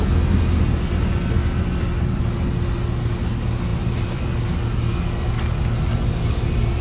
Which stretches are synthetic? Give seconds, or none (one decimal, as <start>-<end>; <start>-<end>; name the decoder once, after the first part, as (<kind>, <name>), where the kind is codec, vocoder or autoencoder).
1.4-2.2 (vocoder, BigVGAN v2); 3.7-4.3